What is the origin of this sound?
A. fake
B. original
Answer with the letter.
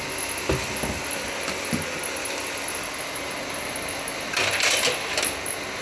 B